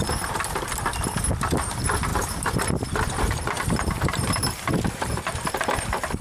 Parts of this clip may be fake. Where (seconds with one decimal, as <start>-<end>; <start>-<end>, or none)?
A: 2.1-5.2